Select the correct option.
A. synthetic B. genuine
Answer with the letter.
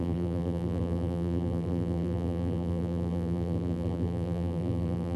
A